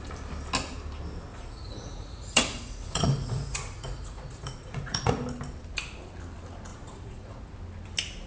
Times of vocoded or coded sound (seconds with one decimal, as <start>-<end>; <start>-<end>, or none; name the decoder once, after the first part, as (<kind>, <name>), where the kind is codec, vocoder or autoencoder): 1.3-5.1 (vocoder, Vocos); 6.7-7.5